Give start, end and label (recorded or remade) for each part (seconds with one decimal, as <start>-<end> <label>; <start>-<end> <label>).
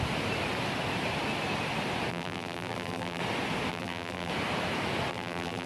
0.0-2.1 recorded; 2.1-3.2 remade; 3.2-3.7 recorded; 3.7-4.3 remade; 4.3-5.1 recorded; 5.1-5.7 remade